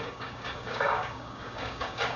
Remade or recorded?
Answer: remade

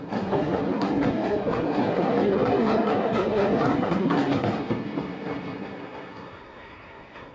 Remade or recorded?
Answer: remade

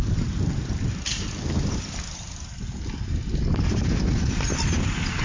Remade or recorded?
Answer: recorded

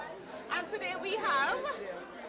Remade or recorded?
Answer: recorded